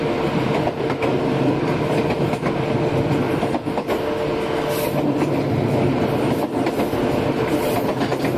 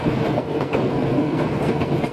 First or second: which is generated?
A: second